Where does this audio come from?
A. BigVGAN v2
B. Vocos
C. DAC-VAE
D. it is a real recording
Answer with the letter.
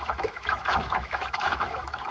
C